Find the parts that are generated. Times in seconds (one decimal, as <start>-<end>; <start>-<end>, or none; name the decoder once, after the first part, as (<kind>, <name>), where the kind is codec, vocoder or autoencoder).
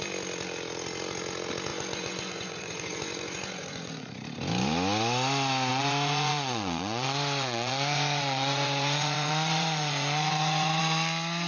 1.7-4.1 (vocoder, Vocos); 5.7-10.8